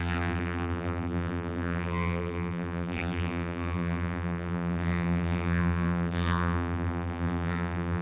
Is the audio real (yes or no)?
no